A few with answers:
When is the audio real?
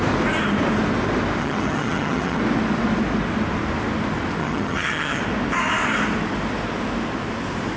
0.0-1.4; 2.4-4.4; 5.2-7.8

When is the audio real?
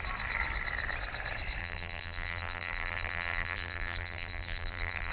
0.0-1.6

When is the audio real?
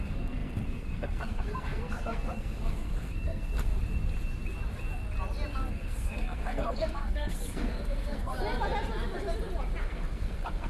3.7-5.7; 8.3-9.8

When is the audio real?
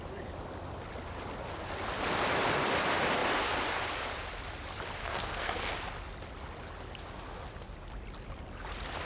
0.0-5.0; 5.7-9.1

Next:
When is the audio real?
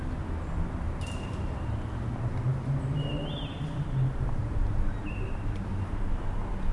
0.0-2.5; 5.9-6.7